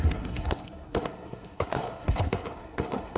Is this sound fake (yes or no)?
yes